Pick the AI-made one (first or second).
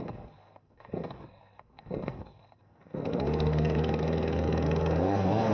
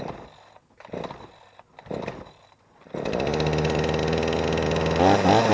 first